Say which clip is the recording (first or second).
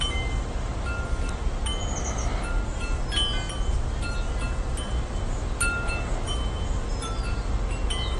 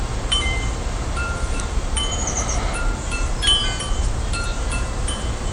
first